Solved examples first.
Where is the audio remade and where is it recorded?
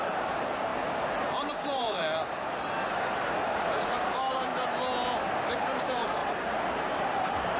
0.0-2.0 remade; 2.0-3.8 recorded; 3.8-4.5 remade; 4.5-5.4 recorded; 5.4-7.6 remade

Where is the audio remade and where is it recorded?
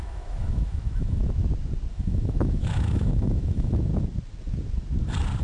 0.0-1.2 remade; 1.2-1.9 recorded; 1.9-3.9 remade; 3.9-5.4 recorded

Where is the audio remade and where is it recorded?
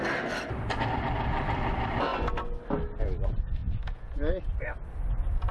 0.0-3.6 recorded; 3.6-4.4 remade; 4.4-5.5 recorded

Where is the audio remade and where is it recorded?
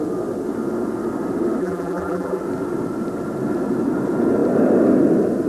0.0-1.6 recorded; 1.6-2.4 remade; 2.4-5.5 recorded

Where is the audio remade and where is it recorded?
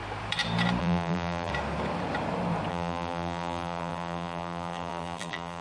0.0-0.8 recorded; 0.8-1.5 remade; 1.5-2.7 recorded; 2.7-5.6 remade